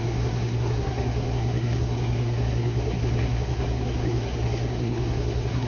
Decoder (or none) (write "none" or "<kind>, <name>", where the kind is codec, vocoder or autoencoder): codec, SNAC